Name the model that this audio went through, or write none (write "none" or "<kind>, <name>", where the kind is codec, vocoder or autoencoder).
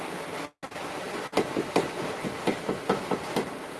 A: none